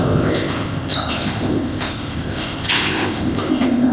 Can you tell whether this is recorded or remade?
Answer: remade